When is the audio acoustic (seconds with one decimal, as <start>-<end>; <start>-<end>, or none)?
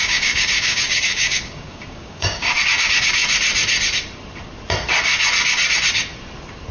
2.6-6.7